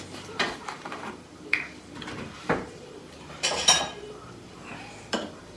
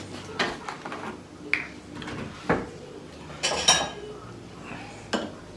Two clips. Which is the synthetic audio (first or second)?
first